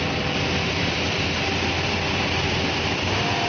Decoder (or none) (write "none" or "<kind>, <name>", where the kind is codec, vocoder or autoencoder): none